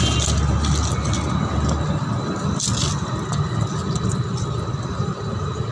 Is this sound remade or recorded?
recorded